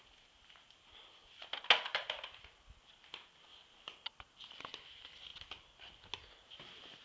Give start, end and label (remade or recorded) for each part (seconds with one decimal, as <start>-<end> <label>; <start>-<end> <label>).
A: 0.0-7.0 recorded